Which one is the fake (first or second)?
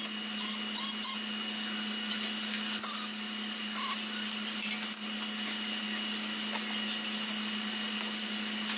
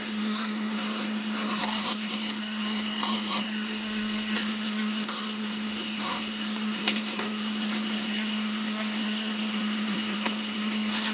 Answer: second